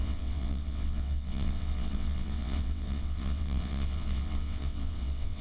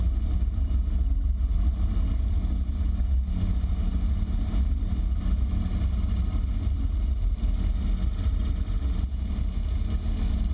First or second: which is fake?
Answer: first